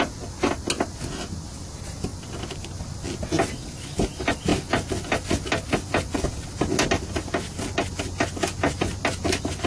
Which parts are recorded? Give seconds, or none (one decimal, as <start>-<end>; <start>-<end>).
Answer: 0.0-9.7